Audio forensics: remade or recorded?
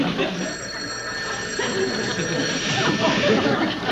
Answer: remade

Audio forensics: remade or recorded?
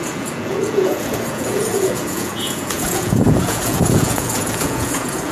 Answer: remade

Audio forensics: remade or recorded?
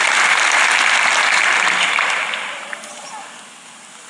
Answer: recorded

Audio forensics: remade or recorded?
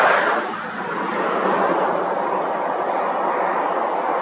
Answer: recorded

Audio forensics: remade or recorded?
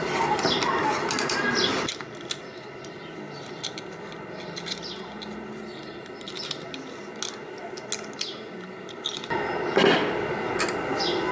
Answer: recorded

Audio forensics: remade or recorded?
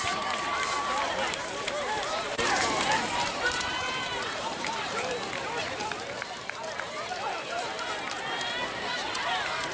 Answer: remade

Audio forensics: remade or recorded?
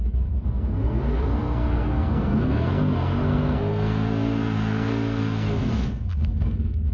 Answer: remade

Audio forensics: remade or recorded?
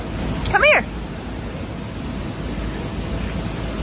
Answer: recorded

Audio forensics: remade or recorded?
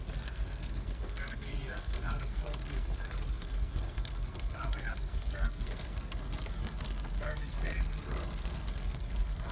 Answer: remade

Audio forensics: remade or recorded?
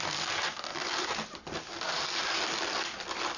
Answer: recorded